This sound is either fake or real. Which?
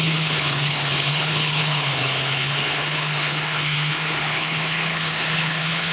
fake